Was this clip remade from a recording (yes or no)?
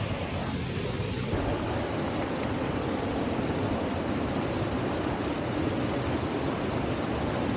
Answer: no